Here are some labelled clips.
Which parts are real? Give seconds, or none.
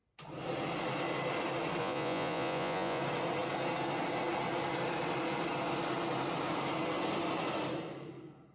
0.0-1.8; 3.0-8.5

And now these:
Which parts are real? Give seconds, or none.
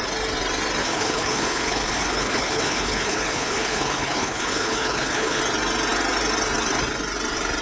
0.0-0.8; 5.4-7.6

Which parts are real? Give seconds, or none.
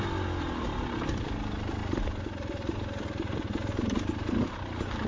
0.0-5.1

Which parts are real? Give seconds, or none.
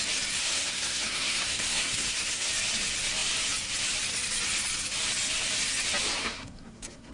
0.0-0.4; 2.5-6.2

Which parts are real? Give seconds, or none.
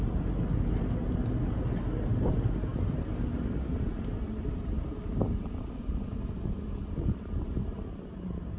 0.0-8.6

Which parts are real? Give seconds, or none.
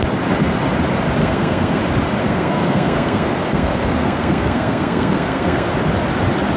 0.0-1.2; 1.8-2.2; 5.7-6.6